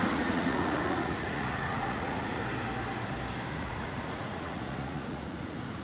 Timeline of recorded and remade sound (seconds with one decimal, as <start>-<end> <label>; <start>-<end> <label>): 0.0-2.4 remade; 2.4-3.5 recorded; 3.5-5.8 remade